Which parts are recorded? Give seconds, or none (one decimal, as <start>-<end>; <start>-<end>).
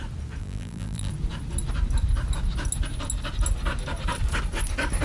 0.0-0.4; 1.1-5.0